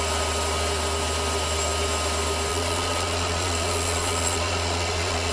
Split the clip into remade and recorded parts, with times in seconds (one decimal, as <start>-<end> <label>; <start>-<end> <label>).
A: 0.0-2.5 recorded; 2.5-5.3 remade